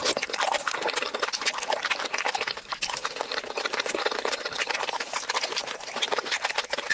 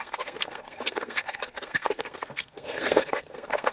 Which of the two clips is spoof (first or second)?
second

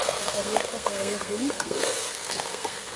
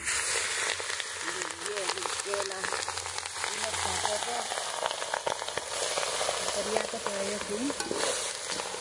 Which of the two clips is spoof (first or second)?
first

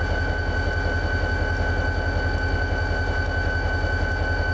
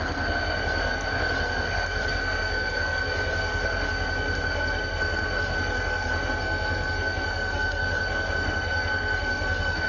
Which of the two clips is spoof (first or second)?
second